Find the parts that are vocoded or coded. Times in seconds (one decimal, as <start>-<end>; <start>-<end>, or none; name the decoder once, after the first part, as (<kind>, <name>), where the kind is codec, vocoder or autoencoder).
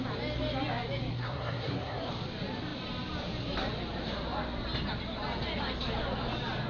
1.1-2.1 (codec, SNAC)